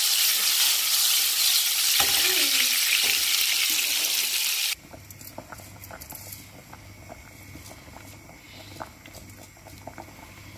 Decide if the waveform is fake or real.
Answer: real